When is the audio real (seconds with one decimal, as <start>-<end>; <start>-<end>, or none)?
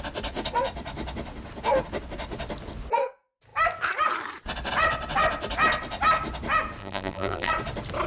0.0-6.8; 7.5-8.1